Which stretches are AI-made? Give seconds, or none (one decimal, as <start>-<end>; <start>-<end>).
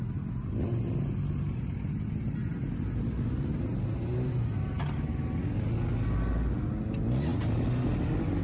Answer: none